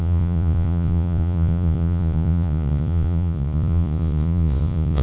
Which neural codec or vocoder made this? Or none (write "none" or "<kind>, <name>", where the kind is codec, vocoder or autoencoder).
vocoder, Vocos